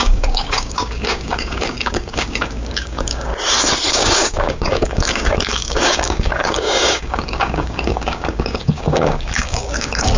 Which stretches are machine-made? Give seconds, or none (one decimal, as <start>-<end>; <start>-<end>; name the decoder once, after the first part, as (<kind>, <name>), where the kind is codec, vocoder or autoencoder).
0.0-3.3 (codec, DAC); 3.9-10.2